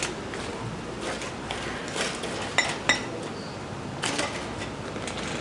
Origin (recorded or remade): recorded